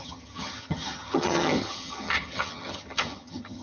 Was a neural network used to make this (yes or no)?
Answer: yes